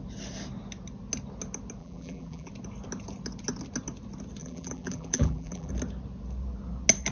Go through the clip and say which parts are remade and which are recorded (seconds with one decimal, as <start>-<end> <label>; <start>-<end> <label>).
0.0-1.8 recorded; 1.8-2.5 remade; 2.5-4.4 recorded; 4.4-5.7 remade; 5.7-7.1 recorded